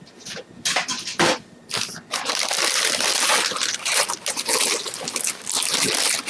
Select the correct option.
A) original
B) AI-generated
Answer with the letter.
A